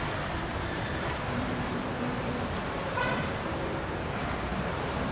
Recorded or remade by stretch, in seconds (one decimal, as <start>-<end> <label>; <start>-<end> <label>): 0.0-0.5 recorded; 0.5-3.6 remade; 3.6-4.5 recorded; 4.5-5.1 remade